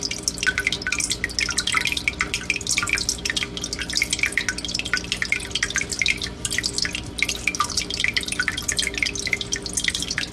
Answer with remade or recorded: recorded